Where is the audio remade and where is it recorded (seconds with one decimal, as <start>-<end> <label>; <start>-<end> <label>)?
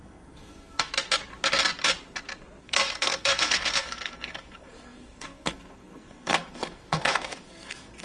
0.0-0.9 remade; 0.9-2.6 recorded; 2.6-8.0 remade